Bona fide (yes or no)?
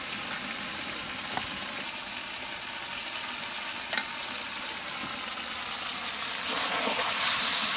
yes